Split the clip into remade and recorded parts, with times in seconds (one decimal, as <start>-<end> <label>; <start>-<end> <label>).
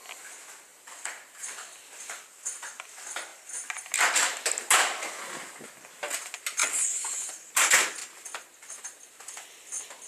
0.0-3.3 recorded; 3.3-3.9 remade; 3.9-10.1 recorded